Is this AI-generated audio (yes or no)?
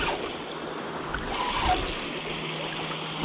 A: no